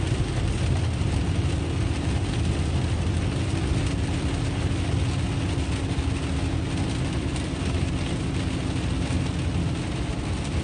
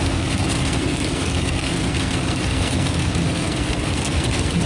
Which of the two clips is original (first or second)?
first